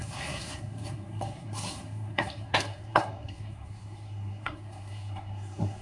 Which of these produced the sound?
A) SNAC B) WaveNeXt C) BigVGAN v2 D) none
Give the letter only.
A